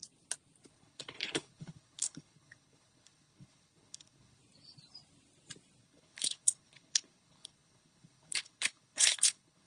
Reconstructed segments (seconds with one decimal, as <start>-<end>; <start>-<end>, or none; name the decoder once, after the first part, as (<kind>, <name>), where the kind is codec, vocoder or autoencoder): 0.7-4.4 (codec, HILCodec); 5.8-9.7